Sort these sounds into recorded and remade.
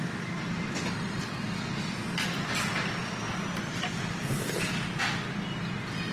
recorded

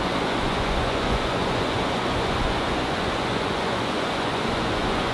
remade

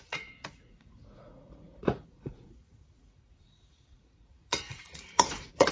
remade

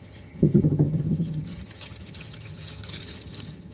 remade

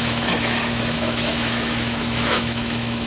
remade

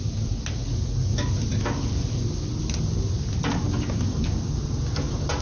recorded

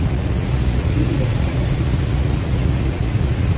remade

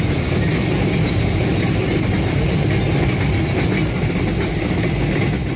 recorded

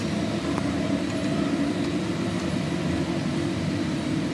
remade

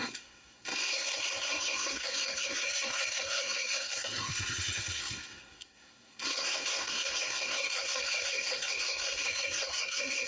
remade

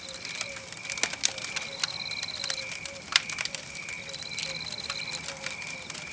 recorded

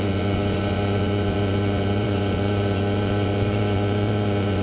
remade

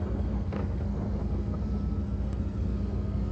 remade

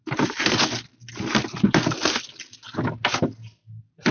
recorded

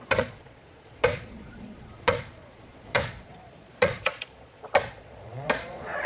remade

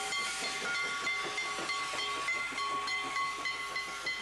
recorded